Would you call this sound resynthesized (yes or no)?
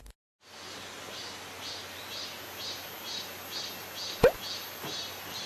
no